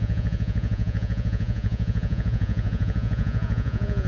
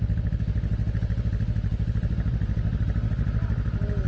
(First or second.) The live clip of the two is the second